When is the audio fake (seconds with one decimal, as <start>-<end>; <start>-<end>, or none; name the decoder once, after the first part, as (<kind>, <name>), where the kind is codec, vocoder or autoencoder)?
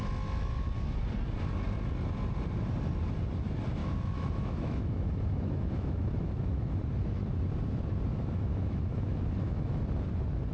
3.8-6.8 (autoencoder, DAC-VAE); 8.1-9.8